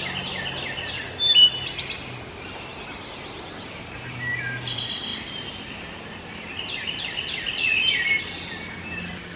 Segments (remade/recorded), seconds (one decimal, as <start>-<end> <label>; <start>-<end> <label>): 0.0-5.1 recorded; 5.1-5.8 remade; 5.8-9.4 recorded